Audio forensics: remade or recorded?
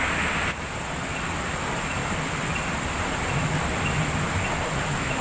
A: recorded